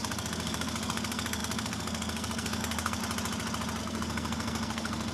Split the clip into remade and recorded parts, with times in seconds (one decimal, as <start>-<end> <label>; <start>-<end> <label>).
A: 0.0-3.0 remade; 3.0-3.8 recorded; 3.8-5.1 remade